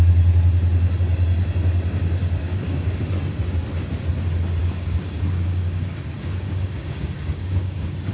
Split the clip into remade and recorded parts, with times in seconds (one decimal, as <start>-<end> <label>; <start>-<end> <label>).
0.0-2.2 recorded; 2.2-3.1 remade; 3.1-4.6 recorded; 4.6-8.1 remade